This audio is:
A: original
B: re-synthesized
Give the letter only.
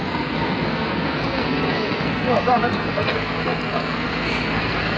B